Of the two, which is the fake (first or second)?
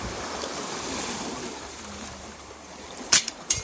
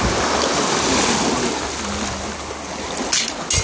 first